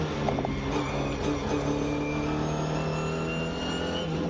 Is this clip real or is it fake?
real